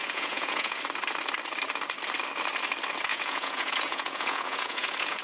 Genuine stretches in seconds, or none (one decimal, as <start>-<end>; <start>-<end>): 0.8-3.1